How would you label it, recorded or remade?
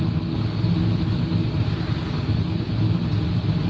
recorded